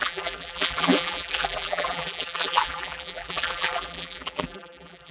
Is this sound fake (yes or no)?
yes